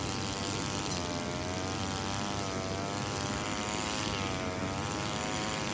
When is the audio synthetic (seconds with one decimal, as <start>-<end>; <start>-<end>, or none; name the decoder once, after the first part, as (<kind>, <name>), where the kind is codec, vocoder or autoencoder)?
none